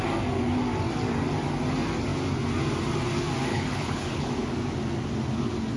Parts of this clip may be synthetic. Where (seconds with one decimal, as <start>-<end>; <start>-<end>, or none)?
3.5-4.3